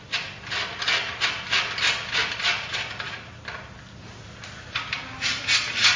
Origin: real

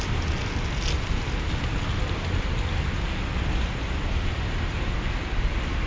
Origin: real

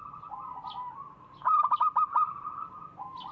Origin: real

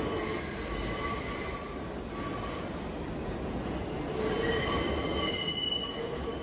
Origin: real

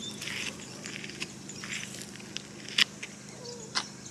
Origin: real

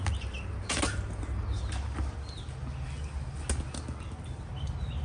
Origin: real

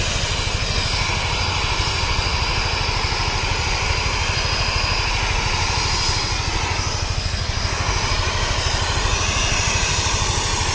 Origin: real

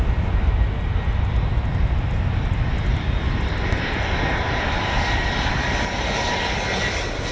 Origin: real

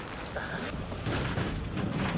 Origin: real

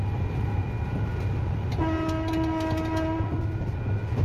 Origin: real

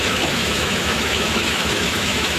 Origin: fake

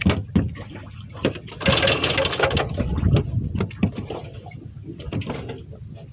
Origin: real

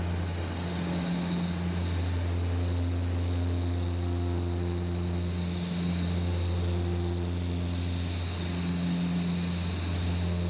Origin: real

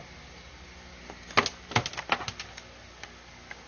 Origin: real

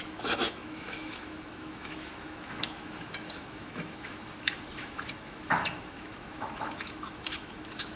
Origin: fake